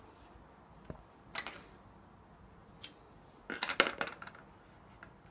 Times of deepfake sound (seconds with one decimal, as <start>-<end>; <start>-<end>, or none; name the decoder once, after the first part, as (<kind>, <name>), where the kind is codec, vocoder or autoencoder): none